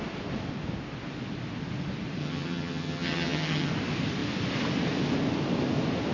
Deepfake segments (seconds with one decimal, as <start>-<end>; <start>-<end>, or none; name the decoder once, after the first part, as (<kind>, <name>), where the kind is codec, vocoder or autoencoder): 2.2-3.7 (vocoder, HiFi-GAN)